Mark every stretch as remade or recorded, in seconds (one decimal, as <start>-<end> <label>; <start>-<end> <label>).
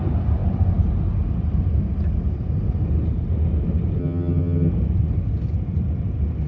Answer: 0.0-4.0 recorded; 4.0-4.7 remade; 4.7-6.5 recorded